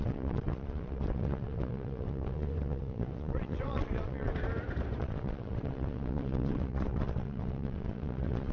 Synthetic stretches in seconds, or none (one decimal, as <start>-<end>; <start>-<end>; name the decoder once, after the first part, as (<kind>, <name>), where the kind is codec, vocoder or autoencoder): 0.0-4.3 (vocoder, WaveNeXt); 5.0-8.5